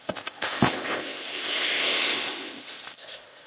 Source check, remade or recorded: remade